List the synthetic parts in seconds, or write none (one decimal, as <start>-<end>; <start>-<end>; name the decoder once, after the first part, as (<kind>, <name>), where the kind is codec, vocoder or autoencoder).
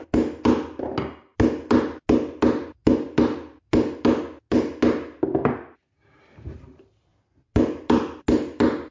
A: 7.1-8.2 (vocoder, BigVGAN v2)